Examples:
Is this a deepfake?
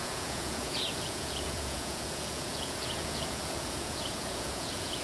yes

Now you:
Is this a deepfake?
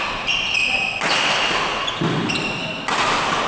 no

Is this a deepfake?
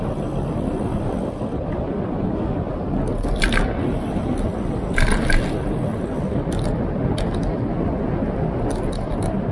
no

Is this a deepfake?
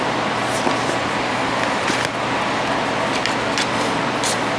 no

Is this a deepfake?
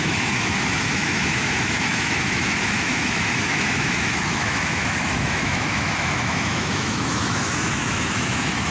yes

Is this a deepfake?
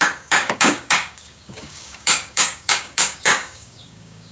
yes